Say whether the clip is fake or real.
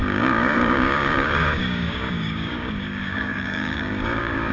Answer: fake